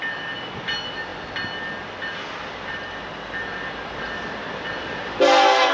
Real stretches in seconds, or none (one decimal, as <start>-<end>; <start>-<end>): 0.0-5.7

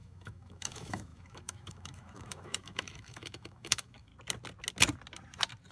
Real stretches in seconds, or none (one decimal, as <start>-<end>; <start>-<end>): 4.1-5.7

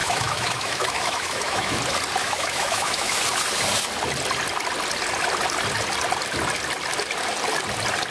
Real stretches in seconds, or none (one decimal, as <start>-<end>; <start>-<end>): 1.8-2.2; 3.2-8.1

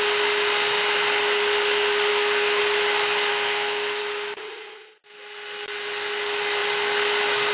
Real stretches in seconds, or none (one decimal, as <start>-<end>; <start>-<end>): 0.0-2.1; 2.6-3.3; 4.0-7.5

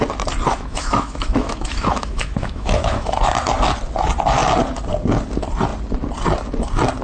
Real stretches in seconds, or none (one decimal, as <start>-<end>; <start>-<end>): 0.0-0.5; 3.3-7.0

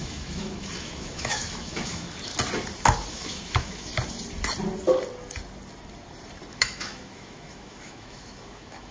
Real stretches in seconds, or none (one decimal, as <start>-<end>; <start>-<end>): 2.3-3.1; 3.9-6.5

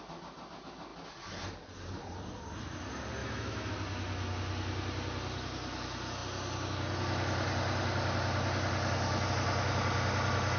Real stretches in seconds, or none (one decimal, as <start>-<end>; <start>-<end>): 0.0-3.2; 3.7-10.6